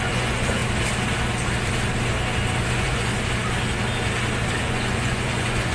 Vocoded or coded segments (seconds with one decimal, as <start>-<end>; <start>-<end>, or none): 0.0-0.6; 2.7-3.1; 4.6-5.7